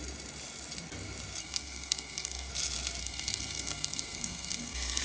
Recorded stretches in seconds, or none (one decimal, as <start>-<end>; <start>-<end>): 0.0-1.4; 2.5-3.0